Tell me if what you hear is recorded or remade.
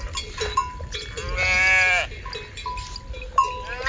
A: recorded